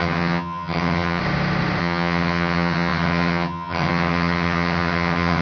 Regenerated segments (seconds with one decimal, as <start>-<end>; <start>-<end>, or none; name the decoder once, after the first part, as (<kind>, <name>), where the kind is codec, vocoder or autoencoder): 0.0-1.2 (vocoder, HiFi-GAN); 1.8-5.4